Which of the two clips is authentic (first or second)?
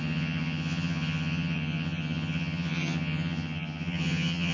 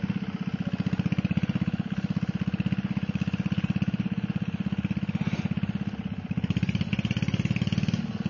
second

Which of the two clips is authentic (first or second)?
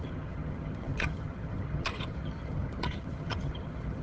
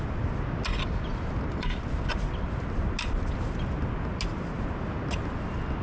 second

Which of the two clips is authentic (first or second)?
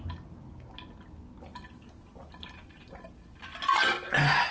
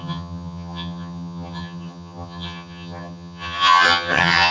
first